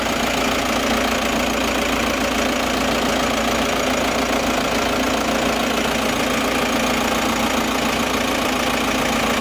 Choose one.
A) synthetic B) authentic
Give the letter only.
B